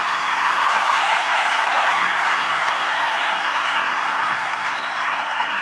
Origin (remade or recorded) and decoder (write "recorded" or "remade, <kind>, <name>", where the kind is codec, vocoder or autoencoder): remade, codec, SNAC